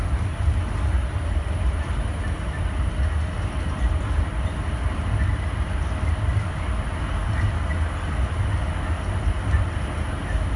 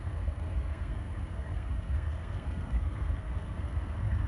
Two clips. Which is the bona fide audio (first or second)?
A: first